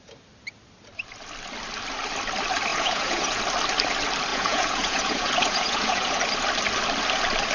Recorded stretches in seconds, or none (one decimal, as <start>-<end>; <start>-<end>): 0.0-2.7; 3.4-4.3; 6.2-7.5